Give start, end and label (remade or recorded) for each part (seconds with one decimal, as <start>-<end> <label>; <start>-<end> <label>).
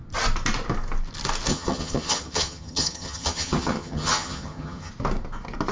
0.0-1.5 recorded; 1.5-4.9 remade; 4.9-5.7 recorded